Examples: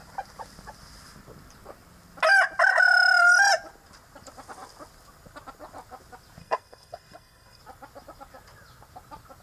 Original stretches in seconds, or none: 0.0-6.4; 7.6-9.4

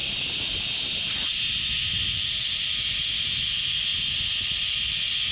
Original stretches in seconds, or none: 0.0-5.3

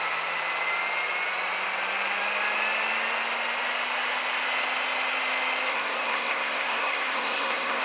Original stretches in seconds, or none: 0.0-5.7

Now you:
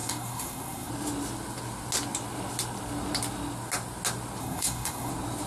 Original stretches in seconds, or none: 0.9-4.4; 5.1-5.5